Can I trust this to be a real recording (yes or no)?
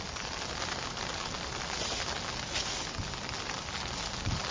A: yes